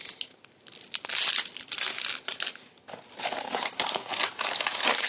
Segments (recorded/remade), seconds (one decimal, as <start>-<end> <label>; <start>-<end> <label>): 0.0-3.1 recorded; 3.1-5.1 remade

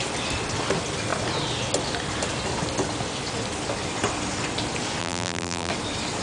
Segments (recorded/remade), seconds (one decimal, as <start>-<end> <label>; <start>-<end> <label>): 0.0-5.0 recorded; 5.0-5.7 remade; 5.7-6.2 recorded

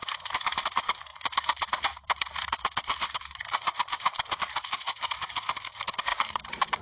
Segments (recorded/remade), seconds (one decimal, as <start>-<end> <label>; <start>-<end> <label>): 0.0-0.6 remade; 0.6-1.1 recorded; 1.1-4.4 remade; 4.4-6.1 recorded; 6.1-6.8 remade

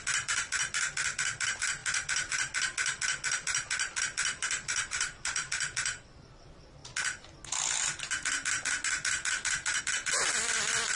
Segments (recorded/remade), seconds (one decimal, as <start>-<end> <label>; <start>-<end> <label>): 0.0-1.8 remade; 1.8-4.0 recorded; 4.0-6.8 remade; 6.8-9.8 recorded; 9.8-11.0 remade

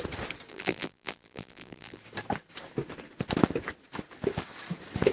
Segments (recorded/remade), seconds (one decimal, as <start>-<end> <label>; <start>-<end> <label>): 0.0-0.5 recorded; 0.5-2.0 remade; 2.0-5.1 recorded